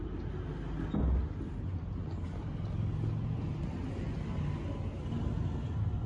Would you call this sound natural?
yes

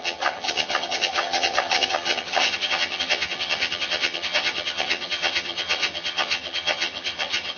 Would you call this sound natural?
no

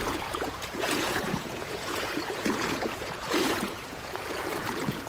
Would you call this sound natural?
no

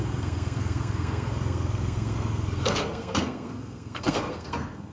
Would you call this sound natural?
no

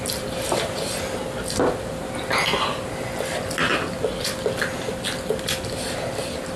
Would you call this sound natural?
yes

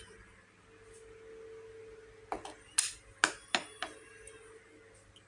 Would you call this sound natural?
yes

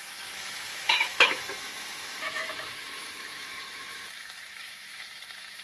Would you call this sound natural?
no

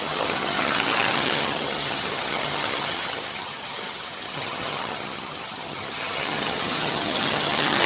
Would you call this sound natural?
no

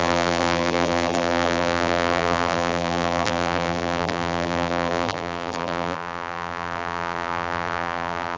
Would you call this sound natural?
no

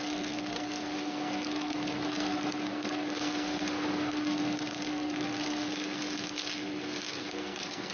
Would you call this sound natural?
no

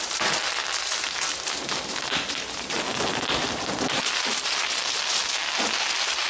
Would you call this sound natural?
yes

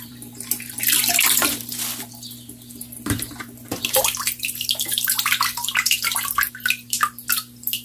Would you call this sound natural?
no